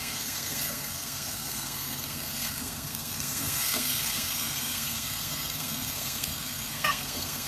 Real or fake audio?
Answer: fake